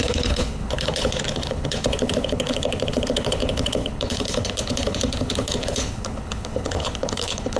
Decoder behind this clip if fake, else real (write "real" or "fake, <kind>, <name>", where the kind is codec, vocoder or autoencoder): fake, codec, HILCodec